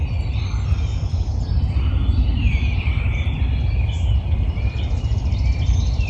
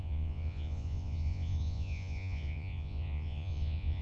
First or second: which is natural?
first